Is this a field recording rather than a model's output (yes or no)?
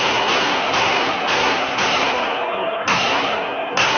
no